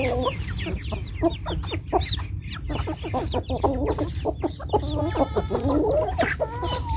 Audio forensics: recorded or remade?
recorded